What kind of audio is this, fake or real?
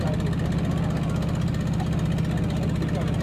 real